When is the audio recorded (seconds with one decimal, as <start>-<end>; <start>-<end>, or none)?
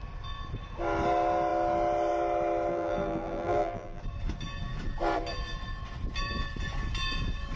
0.0-2.7; 4.0-7.6